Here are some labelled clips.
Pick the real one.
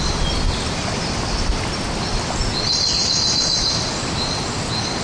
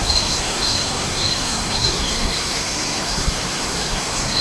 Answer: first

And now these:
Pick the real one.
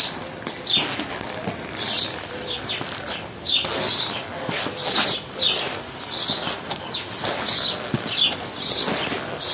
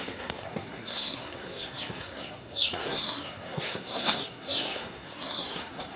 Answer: first